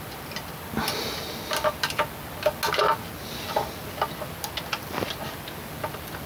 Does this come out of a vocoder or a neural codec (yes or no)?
no